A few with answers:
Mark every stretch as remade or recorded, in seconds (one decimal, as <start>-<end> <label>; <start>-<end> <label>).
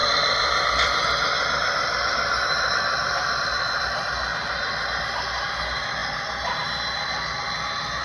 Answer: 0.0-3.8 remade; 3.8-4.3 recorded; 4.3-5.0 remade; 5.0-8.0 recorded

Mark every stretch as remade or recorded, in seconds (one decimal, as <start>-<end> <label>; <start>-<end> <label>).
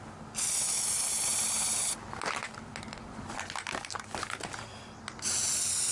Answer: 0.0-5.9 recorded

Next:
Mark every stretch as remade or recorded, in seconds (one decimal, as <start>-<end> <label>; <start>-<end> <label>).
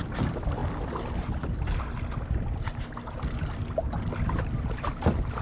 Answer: 0.0-5.4 recorded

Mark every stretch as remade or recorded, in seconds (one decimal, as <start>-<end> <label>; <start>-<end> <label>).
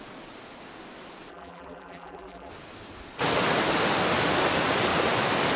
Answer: 0.0-1.3 recorded; 1.3-2.5 remade; 2.5-5.6 recorded